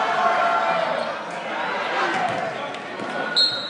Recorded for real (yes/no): yes